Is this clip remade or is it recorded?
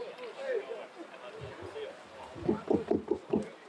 recorded